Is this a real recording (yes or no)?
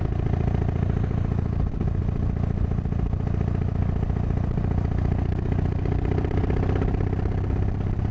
yes